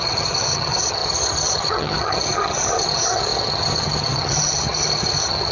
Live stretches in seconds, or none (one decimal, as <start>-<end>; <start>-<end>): none